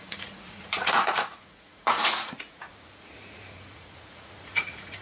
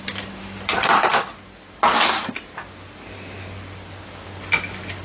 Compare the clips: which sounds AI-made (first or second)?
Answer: first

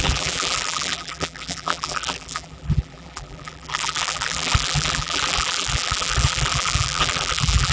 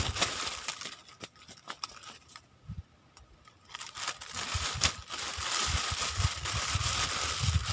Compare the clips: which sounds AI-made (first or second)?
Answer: first